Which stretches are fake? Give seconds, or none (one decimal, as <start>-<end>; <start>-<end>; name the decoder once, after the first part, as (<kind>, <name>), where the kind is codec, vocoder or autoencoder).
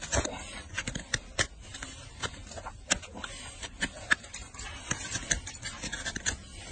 none